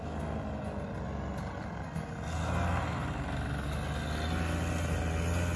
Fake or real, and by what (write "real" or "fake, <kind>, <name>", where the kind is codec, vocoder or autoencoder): real